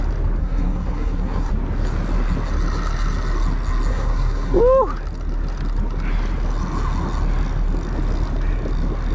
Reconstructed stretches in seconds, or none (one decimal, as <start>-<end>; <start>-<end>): 0.4-1.5; 3.9-4.6